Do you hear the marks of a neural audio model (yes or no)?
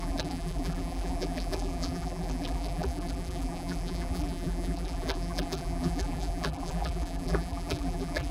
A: yes